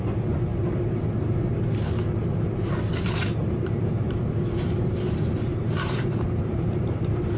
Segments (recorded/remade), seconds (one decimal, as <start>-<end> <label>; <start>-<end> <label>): 0.0-3.4 recorded; 3.4-4.2 remade; 4.2-5.5 recorded; 5.5-7.4 remade